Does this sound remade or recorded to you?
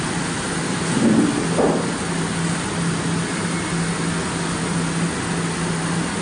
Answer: recorded